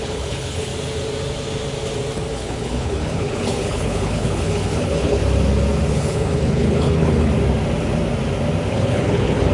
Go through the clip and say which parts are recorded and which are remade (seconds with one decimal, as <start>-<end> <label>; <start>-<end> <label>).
0.0-0.7 remade; 0.7-2.3 recorded; 2.3-5.2 remade; 5.2-5.9 recorded; 5.9-7.3 remade; 7.3-8.7 recorded; 8.7-9.5 remade